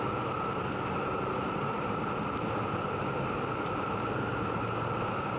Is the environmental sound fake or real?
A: real